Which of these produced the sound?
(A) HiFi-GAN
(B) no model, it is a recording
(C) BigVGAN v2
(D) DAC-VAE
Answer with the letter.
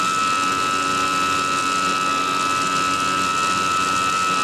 B